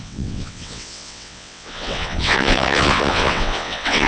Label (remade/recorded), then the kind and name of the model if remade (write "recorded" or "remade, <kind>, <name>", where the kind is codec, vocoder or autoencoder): remade, vocoder, WaveNeXt